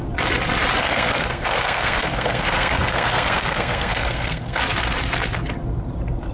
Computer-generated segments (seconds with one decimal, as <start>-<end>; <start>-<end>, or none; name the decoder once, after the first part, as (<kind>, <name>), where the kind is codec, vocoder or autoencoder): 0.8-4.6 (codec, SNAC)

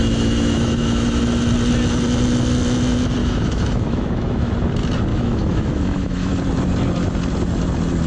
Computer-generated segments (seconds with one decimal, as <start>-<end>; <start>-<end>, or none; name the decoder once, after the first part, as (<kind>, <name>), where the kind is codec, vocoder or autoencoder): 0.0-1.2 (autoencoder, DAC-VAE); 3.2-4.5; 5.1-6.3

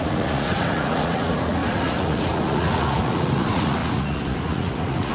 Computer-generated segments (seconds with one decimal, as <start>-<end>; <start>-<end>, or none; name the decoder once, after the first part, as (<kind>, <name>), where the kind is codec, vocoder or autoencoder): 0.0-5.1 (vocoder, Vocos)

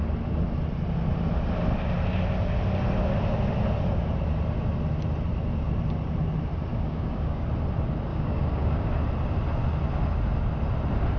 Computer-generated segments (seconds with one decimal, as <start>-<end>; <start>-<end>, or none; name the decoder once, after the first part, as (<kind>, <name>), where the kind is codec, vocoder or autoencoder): 6.7-7.5 (codec, DAC); 8.1-8.9